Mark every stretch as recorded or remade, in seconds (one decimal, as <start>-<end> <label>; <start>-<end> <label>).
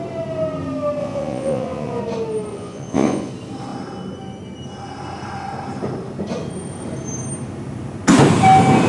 0.0-1.0 recorded; 1.0-2.0 remade; 2.0-2.5 recorded; 2.5-3.3 remade; 3.3-8.9 recorded